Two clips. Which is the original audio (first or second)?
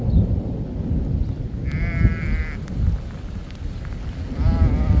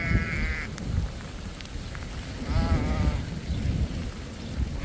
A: first